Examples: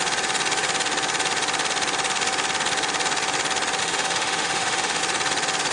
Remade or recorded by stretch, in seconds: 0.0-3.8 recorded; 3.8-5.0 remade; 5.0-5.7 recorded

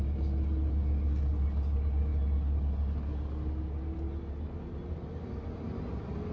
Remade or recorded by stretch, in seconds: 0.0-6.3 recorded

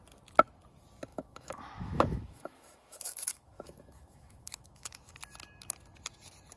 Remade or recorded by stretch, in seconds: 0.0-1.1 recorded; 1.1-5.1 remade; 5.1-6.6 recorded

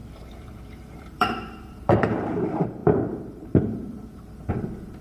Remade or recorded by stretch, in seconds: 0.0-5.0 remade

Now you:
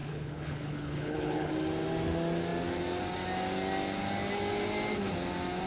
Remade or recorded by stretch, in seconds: 0.0-1.5 remade; 1.5-5.7 recorded